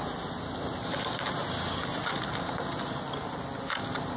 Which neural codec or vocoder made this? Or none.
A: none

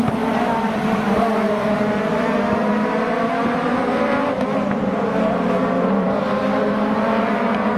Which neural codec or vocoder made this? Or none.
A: none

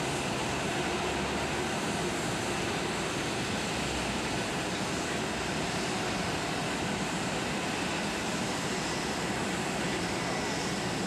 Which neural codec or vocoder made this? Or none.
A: none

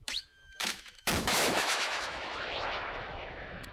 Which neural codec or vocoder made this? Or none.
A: autoencoder, DAC-VAE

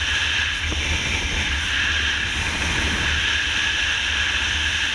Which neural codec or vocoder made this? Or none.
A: vocoder, BigVGAN v2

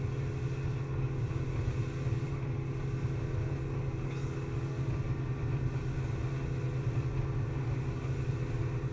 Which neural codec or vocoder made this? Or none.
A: none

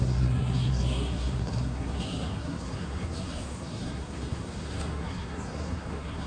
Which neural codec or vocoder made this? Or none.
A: codec, SNAC